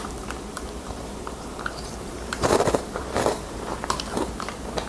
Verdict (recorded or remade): remade